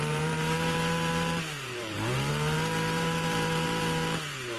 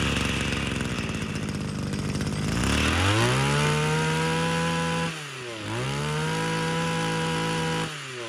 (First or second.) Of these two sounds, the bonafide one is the second